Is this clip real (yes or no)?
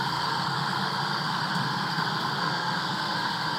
no